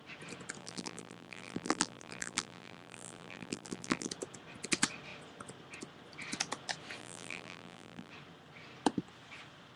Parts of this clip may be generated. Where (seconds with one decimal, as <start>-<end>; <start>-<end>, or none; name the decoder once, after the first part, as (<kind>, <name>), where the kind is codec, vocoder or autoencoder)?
0.6-4.1 (vocoder, BigVGAN v2); 7.0-8.1